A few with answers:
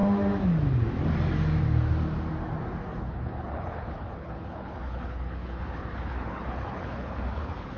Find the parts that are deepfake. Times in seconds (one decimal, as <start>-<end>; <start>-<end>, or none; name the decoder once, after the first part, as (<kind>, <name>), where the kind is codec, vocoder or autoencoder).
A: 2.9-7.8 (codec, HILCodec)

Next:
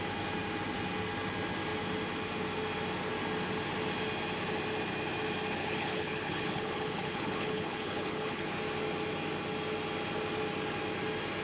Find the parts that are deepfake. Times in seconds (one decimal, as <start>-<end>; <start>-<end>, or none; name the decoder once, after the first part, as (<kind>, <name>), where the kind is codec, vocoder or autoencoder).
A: 5.6-8.5 (codec, HILCodec)

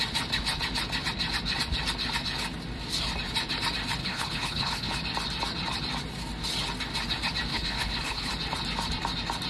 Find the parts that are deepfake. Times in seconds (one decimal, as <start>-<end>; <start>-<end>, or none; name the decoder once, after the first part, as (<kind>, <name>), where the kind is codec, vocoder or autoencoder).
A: 4.0-4.9 (codec, HILCodec); 7.5-8.3

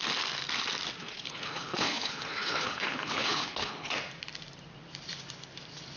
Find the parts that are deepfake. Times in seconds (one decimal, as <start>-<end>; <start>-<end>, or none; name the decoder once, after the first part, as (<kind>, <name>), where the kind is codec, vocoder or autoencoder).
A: 1.0-3.9 (codec, HILCodec)

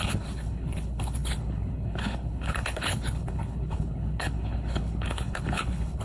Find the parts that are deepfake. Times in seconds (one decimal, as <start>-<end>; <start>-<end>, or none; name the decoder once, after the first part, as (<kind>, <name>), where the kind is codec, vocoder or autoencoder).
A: 0.0-6.0 (codec, HILCodec)